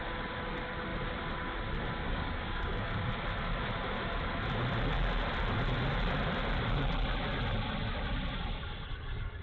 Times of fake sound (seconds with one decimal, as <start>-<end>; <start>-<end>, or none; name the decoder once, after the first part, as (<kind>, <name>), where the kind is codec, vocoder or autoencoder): 2.0-3.1 (codec, DAC)